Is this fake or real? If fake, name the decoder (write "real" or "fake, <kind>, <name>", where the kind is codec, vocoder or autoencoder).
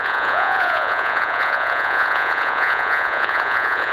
fake, vocoder, Vocos